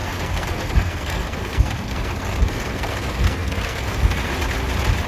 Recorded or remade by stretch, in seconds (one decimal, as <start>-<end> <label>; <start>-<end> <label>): 0.0-4.3 remade; 4.3-5.1 recorded